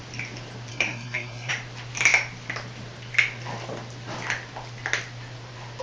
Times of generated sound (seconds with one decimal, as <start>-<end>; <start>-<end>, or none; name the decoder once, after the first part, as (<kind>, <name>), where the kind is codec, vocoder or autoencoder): 0.7-1.5 (codec, SNAC)